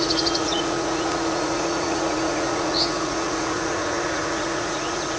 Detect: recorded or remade remade